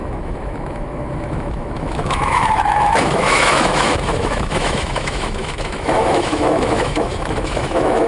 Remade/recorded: remade